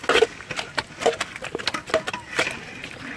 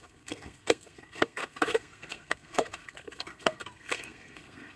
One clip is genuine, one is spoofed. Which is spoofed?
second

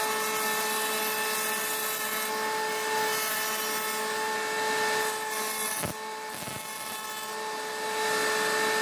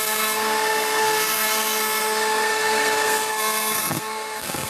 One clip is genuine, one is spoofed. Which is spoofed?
second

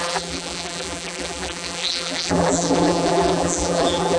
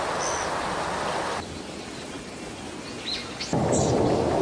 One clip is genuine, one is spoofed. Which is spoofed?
first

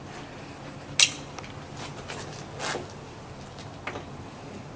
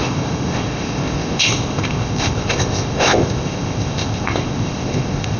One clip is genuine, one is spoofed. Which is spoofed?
second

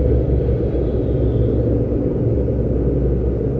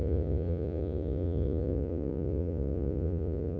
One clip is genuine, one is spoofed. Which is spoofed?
second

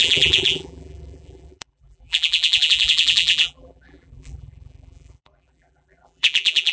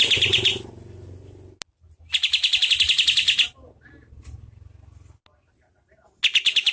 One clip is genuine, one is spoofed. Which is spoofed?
first